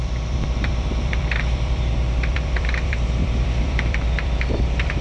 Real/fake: fake